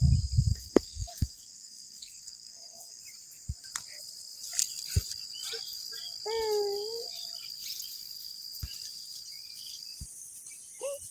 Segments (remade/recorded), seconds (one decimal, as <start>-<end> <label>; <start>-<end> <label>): 0.0-0.5 recorded; 0.5-3.0 remade; 3.0-11.1 recorded